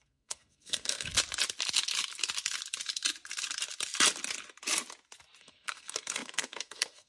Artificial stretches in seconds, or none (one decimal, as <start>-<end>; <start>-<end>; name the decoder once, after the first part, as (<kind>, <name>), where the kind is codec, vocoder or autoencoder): 0.0-1.1 (codec, SNAC); 5.4-7.1